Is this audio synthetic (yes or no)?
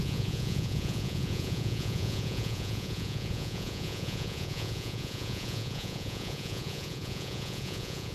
yes